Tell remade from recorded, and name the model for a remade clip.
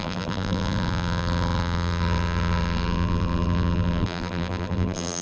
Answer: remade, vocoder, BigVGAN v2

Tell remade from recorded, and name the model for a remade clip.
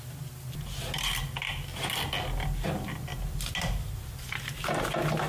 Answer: recorded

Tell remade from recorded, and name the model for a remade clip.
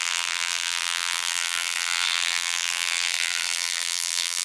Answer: remade, vocoder, BigVGAN v2